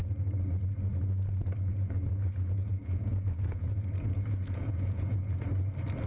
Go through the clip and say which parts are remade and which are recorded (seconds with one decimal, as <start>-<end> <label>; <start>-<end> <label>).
0.0-1.7 recorded; 1.7-5.4 remade; 5.4-6.1 recorded